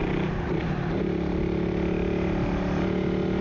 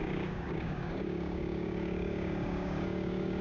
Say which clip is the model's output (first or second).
second